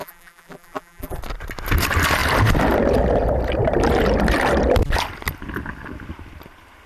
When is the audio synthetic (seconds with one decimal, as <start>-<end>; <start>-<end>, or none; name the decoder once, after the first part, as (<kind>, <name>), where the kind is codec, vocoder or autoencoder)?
0.0-1.2 (vocoder, BigVGAN v2)